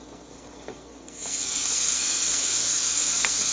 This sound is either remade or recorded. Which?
remade